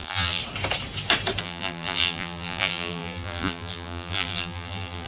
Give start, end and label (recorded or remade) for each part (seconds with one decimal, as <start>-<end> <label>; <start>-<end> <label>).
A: 0.0-0.4 remade; 0.4-1.4 recorded; 1.4-5.1 remade